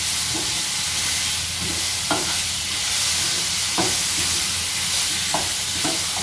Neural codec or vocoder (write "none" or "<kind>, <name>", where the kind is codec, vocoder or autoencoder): none